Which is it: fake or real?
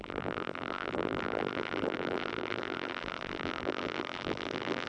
fake